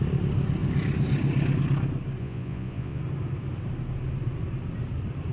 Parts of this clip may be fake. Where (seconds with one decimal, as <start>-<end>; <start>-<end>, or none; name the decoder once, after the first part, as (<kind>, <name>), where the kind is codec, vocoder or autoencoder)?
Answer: 2.2-3.0 (vocoder, Vocos)